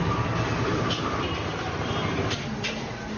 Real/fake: real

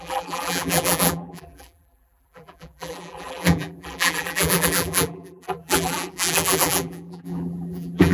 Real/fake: fake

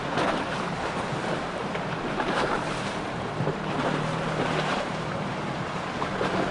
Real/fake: fake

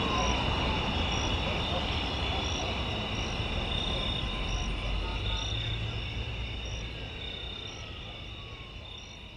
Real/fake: real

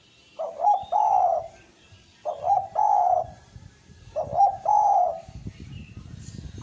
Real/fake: fake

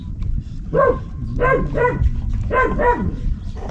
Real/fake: fake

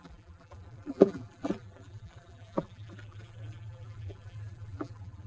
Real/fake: fake